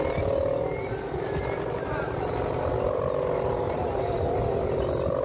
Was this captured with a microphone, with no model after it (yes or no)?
yes